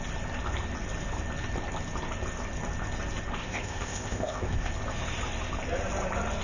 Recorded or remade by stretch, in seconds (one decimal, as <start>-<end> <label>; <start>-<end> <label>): 0.0-3.4 recorded; 3.4-4.7 remade; 4.7-6.4 recorded